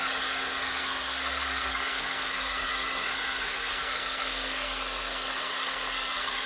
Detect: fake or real fake